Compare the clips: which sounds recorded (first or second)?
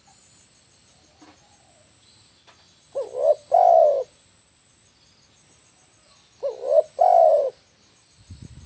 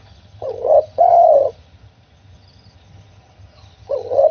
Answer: first